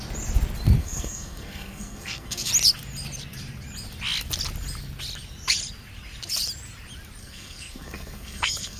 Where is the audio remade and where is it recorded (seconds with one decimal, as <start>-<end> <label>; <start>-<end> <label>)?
0.0-0.8 recorded; 0.8-2.5 remade; 2.5-7.2 recorded; 7.2-8.8 remade